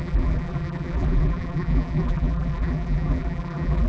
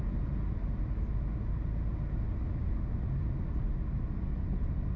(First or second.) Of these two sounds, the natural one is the second